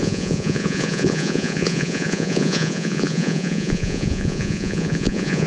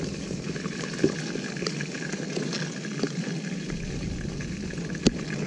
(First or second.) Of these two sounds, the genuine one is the second